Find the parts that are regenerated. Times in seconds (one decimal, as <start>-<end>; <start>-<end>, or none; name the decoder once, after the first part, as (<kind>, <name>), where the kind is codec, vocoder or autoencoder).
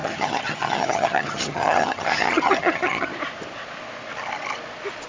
0.0-3.1 (vocoder, HiFi-GAN)